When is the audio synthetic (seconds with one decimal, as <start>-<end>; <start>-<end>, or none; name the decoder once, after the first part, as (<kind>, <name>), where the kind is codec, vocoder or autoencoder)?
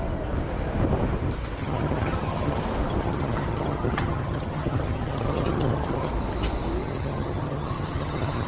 1.6-2.6 (vocoder, HiFi-GAN); 3.0-6.1; 6.8-8.5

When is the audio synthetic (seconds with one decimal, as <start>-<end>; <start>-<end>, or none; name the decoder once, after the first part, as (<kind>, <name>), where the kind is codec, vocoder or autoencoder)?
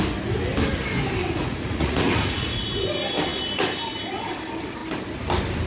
1.2-2.6 (vocoder, Vocos)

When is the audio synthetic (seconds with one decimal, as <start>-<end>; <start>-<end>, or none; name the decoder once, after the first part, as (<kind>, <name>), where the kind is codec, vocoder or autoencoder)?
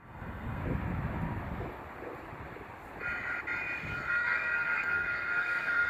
0.0-0.6 (codec, SNAC); 4.1-5.9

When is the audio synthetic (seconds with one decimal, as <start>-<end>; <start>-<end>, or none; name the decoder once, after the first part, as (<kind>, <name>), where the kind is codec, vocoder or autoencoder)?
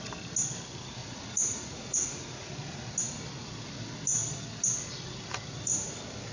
1.0-2.5 (vocoder, Vocos)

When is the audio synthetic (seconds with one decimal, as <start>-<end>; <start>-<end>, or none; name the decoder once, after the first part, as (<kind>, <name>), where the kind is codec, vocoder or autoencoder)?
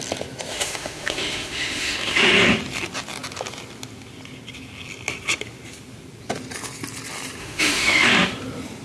0.5-2.3 (autoencoder, DAC-VAE); 7.4-8.1